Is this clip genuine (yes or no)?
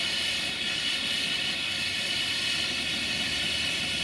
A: yes